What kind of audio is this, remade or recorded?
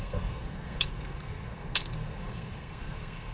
remade